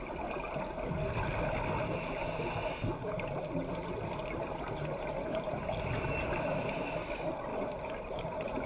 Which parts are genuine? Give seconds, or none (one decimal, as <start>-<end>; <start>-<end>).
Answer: 0.0-7.5